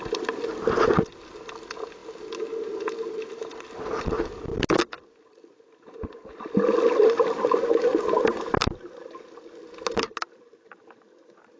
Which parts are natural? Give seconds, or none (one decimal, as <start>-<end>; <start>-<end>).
0.0-11.6